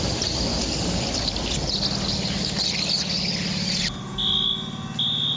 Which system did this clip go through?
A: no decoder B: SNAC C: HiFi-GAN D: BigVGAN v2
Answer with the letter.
A